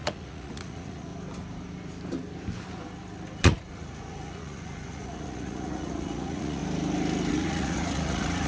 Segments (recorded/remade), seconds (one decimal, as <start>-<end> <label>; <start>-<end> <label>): 0.0-1.1 remade; 1.1-3.4 recorded; 3.4-6.6 remade; 6.6-7.3 recorded; 7.3-8.5 remade